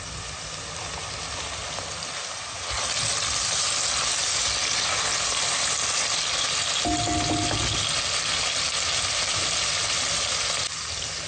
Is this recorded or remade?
recorded